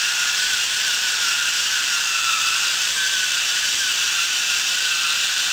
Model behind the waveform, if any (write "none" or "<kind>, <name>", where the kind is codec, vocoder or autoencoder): vocoder, BigVGAN v2